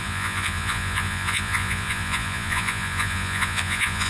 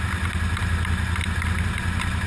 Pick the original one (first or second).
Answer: second